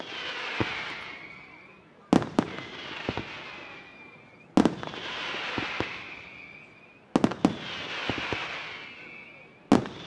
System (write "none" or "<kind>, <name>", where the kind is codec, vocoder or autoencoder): none